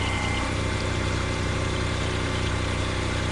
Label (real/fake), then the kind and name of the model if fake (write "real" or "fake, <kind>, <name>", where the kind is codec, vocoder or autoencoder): fake, vocoder, BigVGAN v2